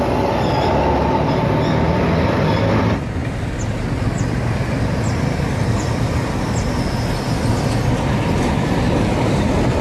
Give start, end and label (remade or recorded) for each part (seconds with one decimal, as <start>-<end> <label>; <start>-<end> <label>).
0.0-9.8 recorded